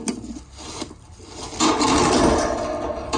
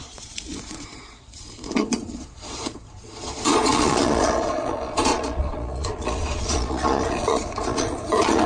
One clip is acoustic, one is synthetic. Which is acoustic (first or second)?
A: first